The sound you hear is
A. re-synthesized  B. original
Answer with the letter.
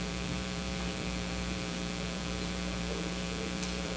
A